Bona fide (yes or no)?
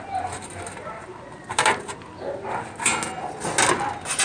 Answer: yes